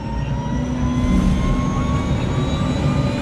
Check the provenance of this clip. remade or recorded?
recorded